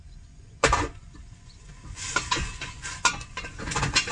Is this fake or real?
fake